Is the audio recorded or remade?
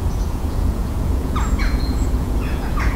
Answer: remade